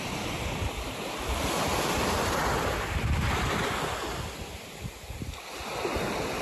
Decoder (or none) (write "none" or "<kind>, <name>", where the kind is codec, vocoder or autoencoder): none